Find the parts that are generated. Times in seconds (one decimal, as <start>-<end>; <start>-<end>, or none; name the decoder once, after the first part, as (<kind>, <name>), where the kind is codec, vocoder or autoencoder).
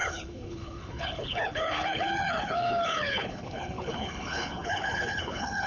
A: 0.0-5.7 (codec, HILCodec)